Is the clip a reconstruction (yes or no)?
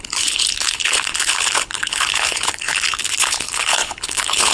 yes